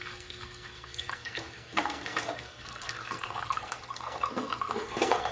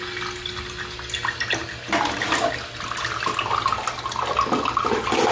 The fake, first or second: first